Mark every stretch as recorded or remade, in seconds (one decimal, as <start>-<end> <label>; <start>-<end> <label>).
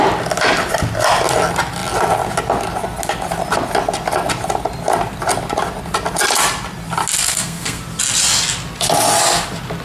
0.0-7.2 recorded; 7.2-7.8 remade; 7.8-9.8 recorded